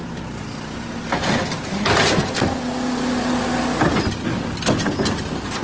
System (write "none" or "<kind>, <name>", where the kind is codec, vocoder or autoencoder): none